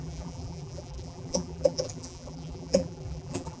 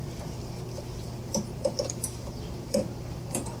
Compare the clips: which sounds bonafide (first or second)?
second